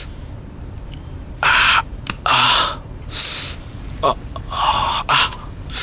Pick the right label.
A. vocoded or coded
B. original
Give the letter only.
A